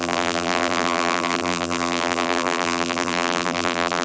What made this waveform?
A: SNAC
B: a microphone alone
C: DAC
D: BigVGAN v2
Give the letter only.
D